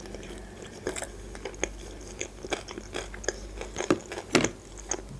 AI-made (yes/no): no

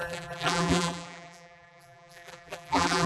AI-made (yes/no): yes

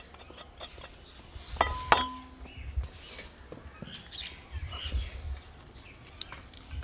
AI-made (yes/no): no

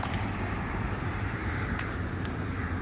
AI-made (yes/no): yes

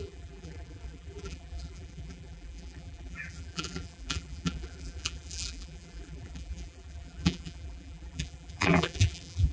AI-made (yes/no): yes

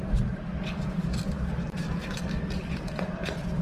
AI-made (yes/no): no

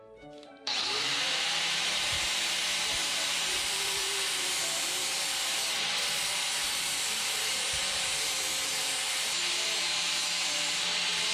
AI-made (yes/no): yes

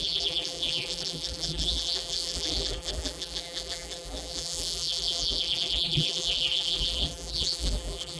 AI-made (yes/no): yes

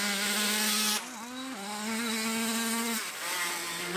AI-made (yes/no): no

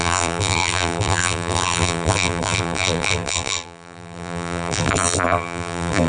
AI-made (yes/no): yes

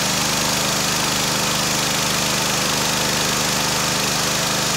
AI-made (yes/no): no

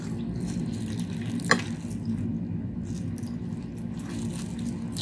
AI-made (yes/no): no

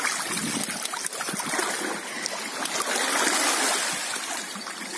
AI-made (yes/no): no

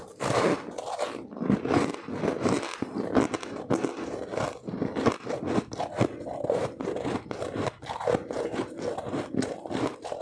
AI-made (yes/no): no